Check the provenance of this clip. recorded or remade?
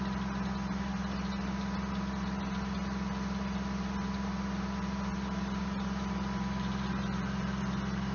recorded